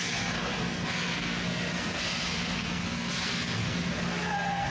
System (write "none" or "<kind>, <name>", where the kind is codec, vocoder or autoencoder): codec, SNAC